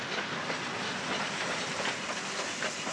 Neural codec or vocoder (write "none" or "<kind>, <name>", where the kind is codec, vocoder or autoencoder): none